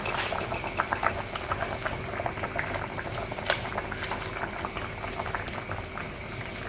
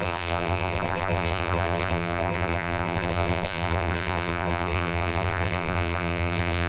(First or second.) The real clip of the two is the first